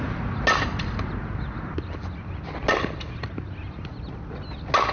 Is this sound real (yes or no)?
yes